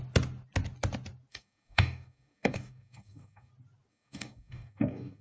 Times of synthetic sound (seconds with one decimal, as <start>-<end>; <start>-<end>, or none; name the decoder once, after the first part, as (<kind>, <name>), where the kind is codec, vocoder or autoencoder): 1.3-3.5 (codec, DAC); 3.9-5.2